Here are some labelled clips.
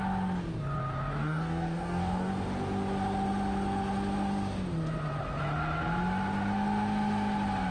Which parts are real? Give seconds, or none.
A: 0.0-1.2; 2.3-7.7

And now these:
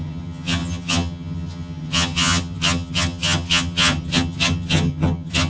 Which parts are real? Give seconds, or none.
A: none